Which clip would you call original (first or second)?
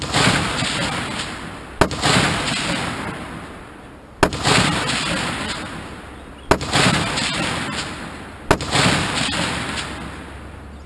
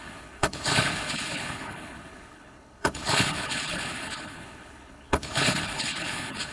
first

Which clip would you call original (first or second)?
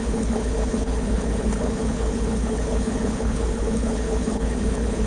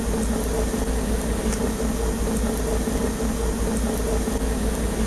second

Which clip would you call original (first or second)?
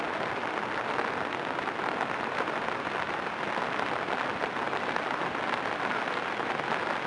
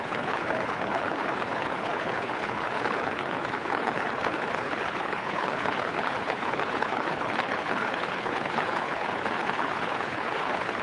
first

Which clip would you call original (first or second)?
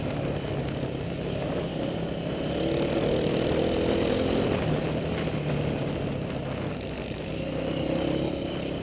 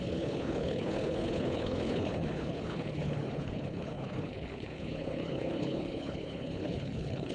first